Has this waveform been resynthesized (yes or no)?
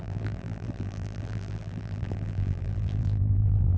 yes